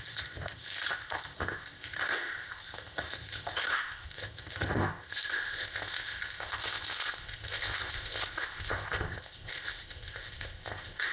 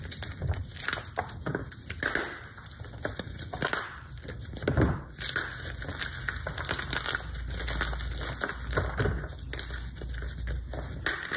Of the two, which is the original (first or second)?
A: second